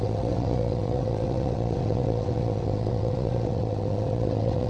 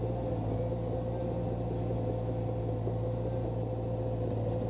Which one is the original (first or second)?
second